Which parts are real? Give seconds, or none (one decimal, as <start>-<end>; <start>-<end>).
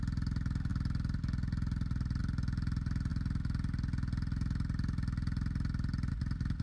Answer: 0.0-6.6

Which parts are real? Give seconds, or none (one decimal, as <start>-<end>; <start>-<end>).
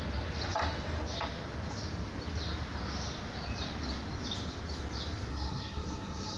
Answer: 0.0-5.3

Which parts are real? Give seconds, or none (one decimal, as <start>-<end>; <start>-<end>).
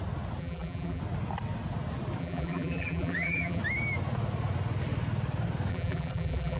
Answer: 0.0-0.4; 1.0-2.2; 3.6-5.7